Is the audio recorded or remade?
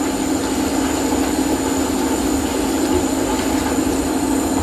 recorded